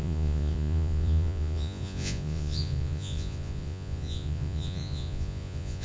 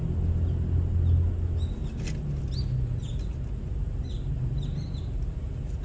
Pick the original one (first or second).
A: second